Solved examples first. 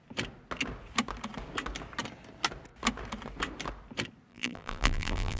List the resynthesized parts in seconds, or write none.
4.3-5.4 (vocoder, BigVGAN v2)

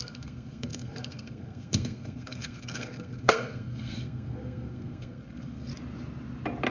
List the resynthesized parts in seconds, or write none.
0.0-5.7 (codec, SNAC)